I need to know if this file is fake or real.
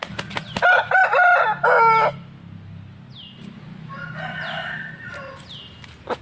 real